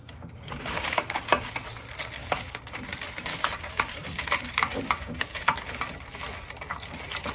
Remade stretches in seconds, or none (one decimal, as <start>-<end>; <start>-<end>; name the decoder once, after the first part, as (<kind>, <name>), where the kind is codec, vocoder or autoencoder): 0.0-1.5 (codec, DAC); 2.2-2.8; 3.3-5.4